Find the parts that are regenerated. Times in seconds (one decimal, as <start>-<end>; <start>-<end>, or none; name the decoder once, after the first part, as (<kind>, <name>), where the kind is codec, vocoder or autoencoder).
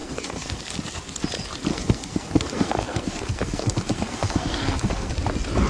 0.0-0.6 (codec, SNAC); 1.7-5.1